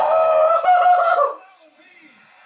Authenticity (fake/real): real